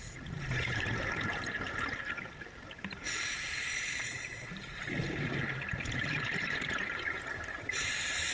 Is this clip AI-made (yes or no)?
yes